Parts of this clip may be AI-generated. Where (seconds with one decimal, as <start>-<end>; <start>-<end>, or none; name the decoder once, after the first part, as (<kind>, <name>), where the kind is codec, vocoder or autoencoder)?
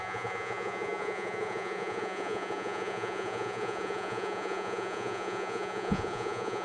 0.0-6.6 (vocoder, Vocos)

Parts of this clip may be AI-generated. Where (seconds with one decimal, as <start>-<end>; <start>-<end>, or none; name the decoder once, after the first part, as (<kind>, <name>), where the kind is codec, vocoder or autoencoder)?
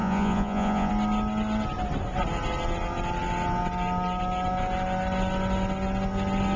0.0-0.9 (vocoder, Vocos)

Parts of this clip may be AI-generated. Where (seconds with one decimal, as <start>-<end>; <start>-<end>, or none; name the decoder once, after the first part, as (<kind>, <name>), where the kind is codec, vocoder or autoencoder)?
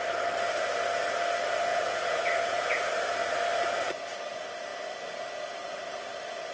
1.7-2.8 (vocoder, Vocos)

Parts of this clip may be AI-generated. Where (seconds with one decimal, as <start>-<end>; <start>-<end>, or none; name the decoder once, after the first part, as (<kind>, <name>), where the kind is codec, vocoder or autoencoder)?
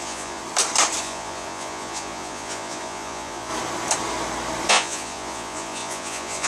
0.0-0.4 (vocoder, Vocos); 1.0-3.5; 4.7-6.5